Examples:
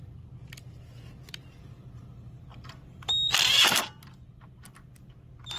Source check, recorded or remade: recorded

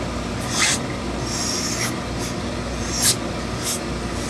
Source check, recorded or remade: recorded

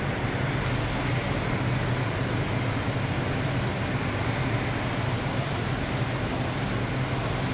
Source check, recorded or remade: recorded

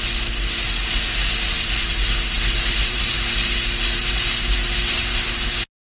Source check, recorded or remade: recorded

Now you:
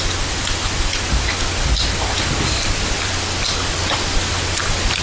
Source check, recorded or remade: remade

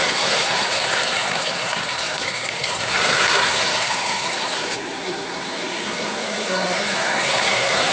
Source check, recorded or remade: remade